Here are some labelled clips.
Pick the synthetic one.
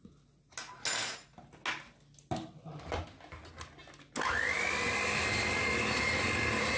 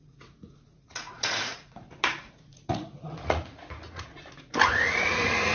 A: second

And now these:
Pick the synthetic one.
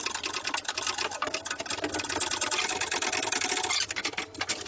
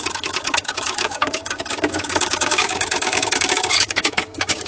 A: second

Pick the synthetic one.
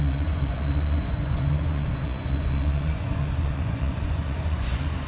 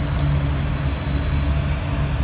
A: first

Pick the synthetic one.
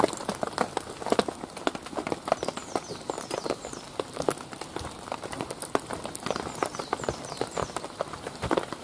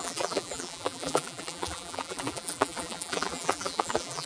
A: second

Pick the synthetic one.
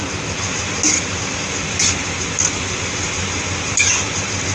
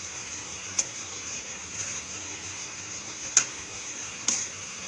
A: second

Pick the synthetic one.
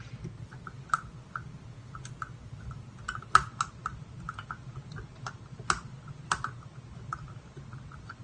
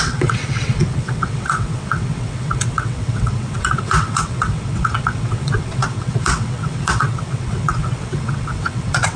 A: second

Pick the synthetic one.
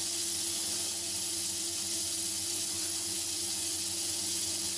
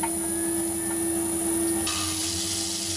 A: first